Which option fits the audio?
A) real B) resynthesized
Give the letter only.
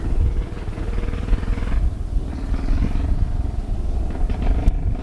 A